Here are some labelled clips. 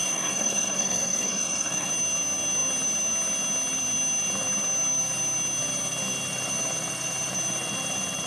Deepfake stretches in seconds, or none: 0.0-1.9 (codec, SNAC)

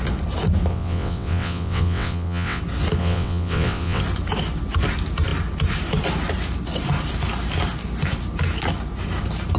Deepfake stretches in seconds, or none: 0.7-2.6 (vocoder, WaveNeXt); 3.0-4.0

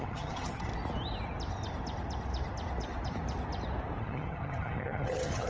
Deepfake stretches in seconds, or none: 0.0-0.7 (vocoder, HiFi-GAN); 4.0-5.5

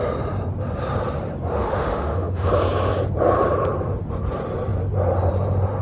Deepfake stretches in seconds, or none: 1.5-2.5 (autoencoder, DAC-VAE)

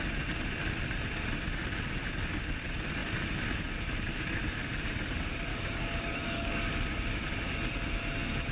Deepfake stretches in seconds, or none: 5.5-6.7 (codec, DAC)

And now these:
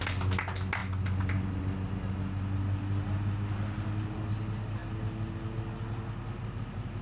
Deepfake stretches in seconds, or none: none

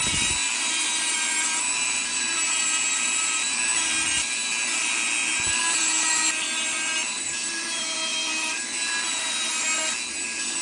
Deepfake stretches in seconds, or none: none